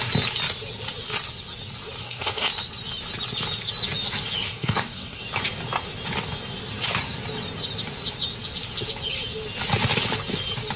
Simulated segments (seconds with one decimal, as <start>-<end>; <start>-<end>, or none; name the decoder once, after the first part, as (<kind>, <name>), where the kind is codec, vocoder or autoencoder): 2.0-2.5 (codec, SNAC); 4.5-5.2